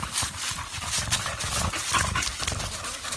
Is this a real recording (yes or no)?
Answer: yes